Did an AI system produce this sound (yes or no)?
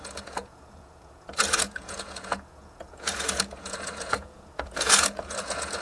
yes